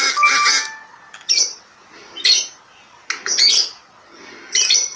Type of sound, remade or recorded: recorded